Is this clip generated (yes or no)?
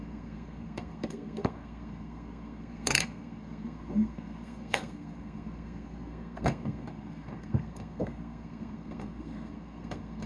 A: yes